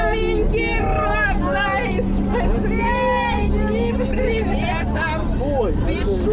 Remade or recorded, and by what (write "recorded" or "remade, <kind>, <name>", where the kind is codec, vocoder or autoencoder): recorded